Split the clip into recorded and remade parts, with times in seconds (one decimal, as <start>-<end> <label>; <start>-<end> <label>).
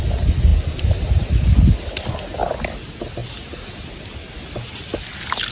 0.0-5.5 recorded